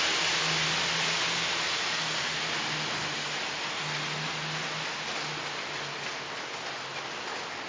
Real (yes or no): yes